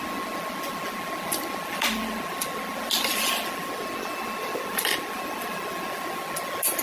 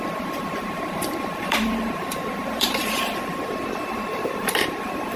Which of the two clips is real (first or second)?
first